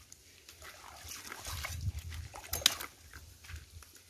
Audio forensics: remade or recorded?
recorded